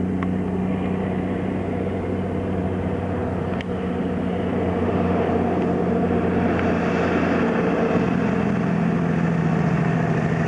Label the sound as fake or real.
real